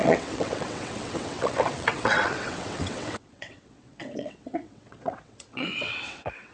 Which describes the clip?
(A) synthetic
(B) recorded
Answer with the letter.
A